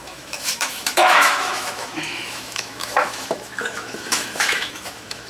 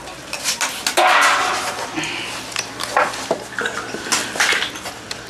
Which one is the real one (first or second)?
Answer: second